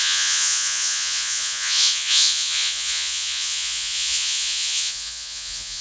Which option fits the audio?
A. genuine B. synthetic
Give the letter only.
B